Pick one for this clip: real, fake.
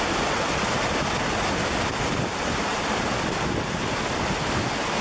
real